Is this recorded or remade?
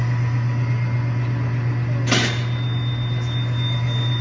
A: recorded